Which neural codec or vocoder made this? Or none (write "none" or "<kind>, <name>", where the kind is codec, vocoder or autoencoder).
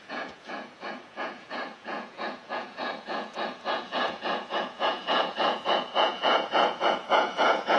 vocoder, Vocos